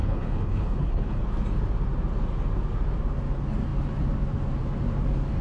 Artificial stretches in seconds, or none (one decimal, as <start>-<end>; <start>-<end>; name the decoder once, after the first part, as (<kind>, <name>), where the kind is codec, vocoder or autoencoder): 0.0-1.2 (codec, HILCodec)